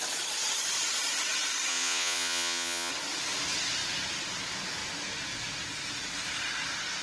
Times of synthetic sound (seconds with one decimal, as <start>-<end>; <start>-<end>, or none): 1.7-2.9